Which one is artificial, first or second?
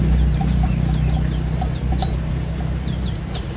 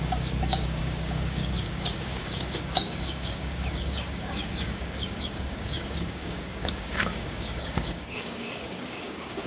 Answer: second